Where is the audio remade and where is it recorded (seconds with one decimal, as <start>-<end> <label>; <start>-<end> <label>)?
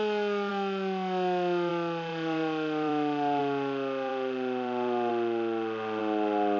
0.0-2.1 recorded; 2.1-3.4 remade; 3.4-4.1 recorded; 4.1-5.1 remade; 5.1-6.6 recorded